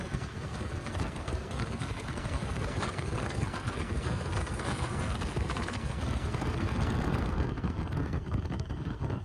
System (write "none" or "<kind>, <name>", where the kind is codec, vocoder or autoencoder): codec, SNAC